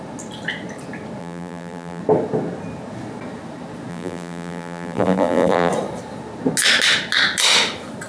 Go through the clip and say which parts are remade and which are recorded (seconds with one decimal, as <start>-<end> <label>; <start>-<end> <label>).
0.0-1.2 recorded; 1.2-2.0 remade; 2.0-3.9 recorded; 3.9-5.7 remade; 5.7-8.1 recorded